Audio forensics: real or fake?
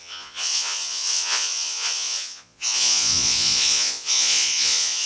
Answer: fake